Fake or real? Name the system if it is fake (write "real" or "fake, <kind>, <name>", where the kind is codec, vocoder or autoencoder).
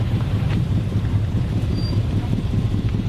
fake, vocoder, BigVGAN v2